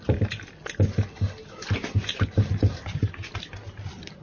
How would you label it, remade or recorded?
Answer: recorded